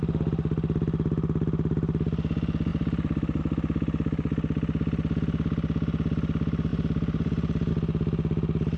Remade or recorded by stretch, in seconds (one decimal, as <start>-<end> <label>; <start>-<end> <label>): 0.0-2.7 recorded; 2.7-3.4 remade; 3.4-6.7 recorded; 6.7-7.7 remade; 7.7-8.8 recorded